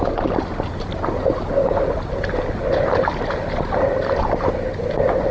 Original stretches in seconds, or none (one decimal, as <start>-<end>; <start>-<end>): 0.0-5.3